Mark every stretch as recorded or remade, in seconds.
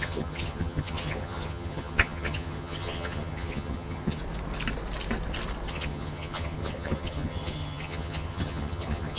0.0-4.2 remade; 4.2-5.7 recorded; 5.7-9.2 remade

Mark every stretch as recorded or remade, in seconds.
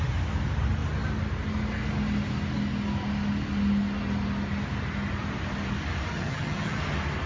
0.0-6.1 recorded; 6.1-6.8 remade; 6.8-7.3 recorded